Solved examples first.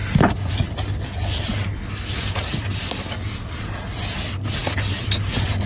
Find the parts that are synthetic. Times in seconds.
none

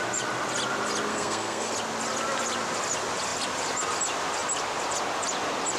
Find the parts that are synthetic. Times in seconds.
1.1-1.7 (codec, SNAC)

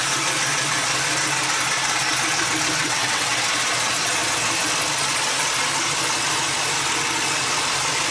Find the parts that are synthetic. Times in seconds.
2.8-3.3 (vocoder, WaveNeXt)

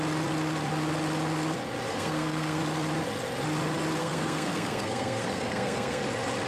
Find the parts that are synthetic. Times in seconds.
1.9-2.6 (codec, SNAC); 4.0-6.0

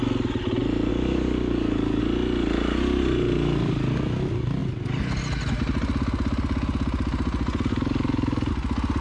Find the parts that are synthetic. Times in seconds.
0.9-2.0 (codec, DAC); 7.7-8.5

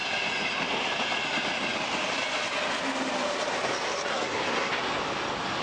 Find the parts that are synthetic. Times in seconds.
4.1-4.7 (codec, SNAC)